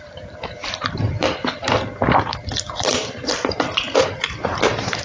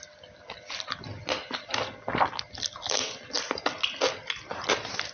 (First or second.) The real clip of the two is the second